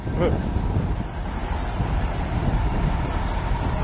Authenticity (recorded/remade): recorded